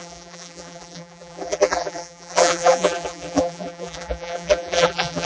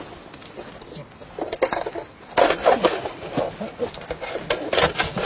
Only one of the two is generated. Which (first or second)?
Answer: first